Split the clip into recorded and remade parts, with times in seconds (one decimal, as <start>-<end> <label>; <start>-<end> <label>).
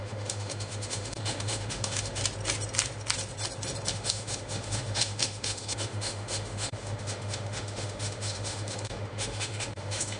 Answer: 0.0-2.2 remade; 2.2-3.9 recorded; 3.9-10.2 remade